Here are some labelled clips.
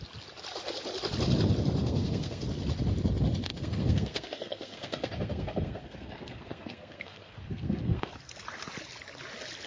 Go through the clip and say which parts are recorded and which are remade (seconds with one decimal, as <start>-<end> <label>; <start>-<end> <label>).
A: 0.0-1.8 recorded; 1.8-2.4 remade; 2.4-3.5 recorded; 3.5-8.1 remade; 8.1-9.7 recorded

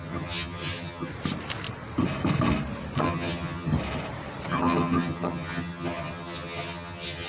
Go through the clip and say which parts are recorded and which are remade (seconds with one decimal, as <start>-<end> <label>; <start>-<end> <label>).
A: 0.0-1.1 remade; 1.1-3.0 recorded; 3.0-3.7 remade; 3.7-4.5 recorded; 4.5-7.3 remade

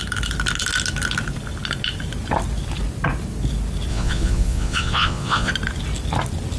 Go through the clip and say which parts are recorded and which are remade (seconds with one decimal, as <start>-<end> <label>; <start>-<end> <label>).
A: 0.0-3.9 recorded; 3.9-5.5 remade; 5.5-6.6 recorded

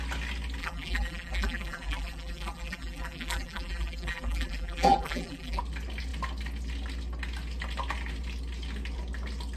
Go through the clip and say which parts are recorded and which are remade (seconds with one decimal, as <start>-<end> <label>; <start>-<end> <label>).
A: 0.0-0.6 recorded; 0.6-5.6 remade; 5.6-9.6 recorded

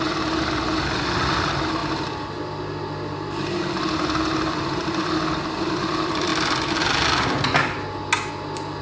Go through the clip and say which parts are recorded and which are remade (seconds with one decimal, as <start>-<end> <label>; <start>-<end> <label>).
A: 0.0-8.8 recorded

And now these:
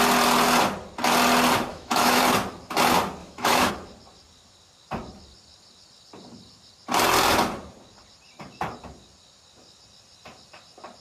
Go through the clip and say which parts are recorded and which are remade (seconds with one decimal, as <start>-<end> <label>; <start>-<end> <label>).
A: 0.0-1.7 recorded; 1.7-2.2 remade; 2.2-3.2 recorded; 3.2-3.7 remade; 3.7-11.0 recorded

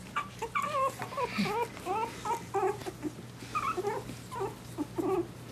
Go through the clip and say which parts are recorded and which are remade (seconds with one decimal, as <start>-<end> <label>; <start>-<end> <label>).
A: 0.0-5.5 recorded